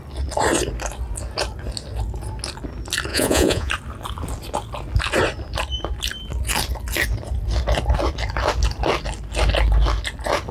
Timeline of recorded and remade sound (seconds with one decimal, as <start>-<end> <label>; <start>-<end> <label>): 0.0-3.1 recorded; 3.1-3.7 remade; 3.7-10.5 recorded